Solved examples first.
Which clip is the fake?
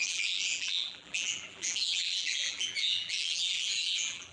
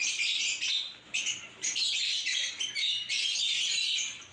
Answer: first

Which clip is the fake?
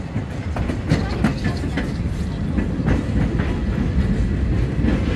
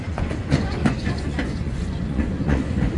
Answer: second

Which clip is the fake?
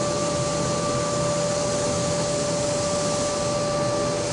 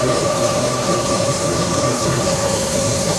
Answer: second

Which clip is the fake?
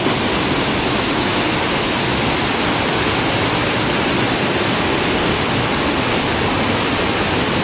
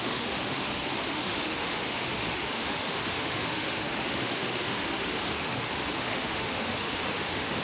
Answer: second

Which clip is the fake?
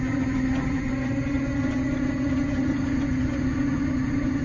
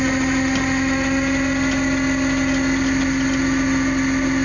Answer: first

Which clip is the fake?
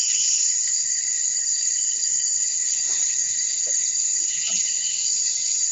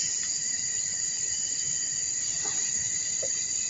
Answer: first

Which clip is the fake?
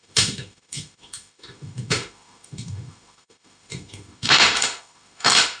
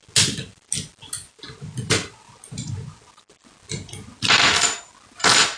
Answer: first